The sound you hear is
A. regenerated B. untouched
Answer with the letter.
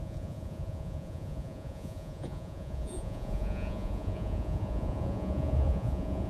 A